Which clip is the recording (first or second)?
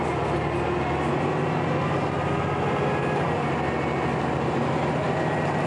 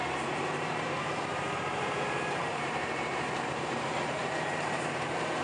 first